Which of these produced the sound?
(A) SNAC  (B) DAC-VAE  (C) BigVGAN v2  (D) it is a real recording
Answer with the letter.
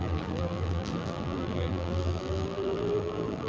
C